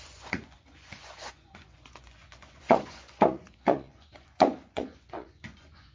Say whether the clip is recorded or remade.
remade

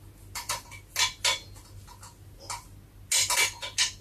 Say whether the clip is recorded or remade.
recorded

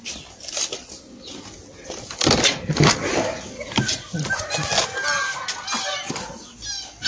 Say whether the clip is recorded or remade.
recorded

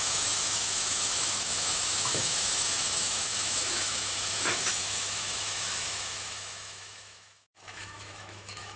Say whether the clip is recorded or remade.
remade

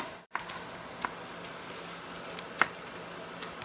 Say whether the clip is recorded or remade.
recorded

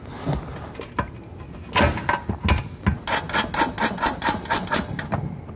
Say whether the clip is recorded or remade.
recorded